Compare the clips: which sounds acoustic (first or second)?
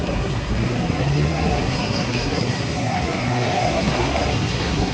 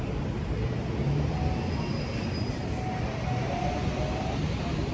second